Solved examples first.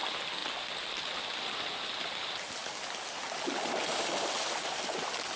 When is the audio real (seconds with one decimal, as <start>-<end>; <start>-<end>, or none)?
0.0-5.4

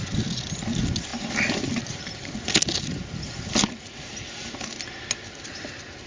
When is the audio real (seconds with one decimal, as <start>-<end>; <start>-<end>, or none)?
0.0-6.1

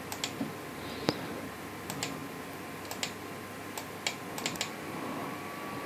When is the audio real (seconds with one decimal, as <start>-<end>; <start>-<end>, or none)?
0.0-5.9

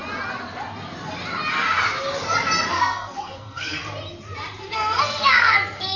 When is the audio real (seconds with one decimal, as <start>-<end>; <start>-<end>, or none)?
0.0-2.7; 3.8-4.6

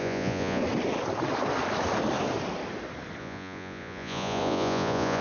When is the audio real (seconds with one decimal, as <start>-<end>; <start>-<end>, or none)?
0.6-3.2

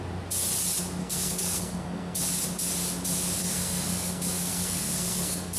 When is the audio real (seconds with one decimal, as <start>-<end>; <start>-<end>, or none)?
0.0-1.0; 2.2-3.4

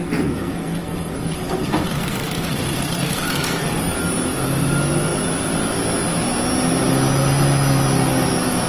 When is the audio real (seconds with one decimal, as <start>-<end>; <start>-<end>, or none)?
3.8-8.7

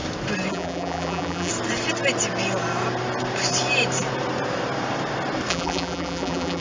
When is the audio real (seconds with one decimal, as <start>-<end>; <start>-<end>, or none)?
0.0-0.5; 1.5-5.5